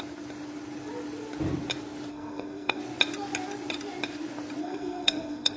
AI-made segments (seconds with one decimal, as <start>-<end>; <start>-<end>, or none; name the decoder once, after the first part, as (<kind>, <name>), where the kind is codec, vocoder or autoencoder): 2.1-2.8 (codec, SNAC); 4.6-5.6